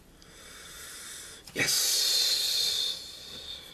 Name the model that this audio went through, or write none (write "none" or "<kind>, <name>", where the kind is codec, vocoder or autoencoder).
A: vocoder, BigVGAN v2